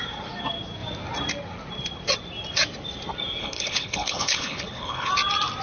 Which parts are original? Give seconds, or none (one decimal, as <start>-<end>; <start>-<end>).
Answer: 0.0-3.4; 5.1-5.6